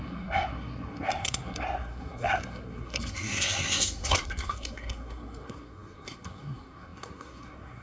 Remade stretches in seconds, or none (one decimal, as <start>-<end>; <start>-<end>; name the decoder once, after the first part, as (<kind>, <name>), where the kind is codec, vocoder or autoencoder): 0.0-7.8 (codec, SNAC)